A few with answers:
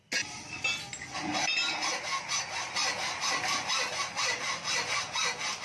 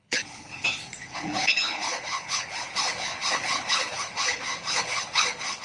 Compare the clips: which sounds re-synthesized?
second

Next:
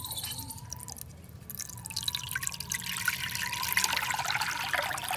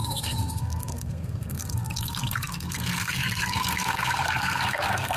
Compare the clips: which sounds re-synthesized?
second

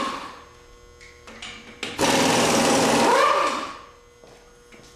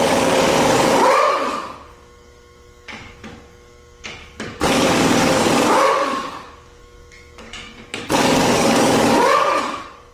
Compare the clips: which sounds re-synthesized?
second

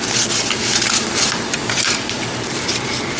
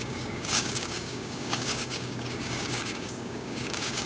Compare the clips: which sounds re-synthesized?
second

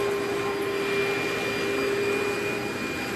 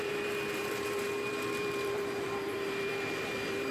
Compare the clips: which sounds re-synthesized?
second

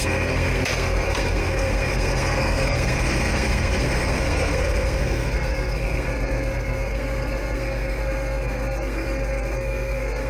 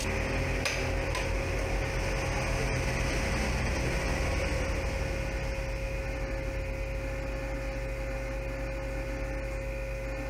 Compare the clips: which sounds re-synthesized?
first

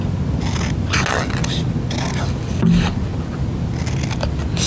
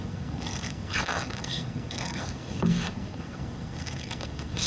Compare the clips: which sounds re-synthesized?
second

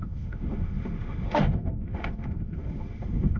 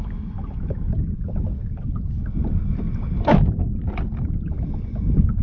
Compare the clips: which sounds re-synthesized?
first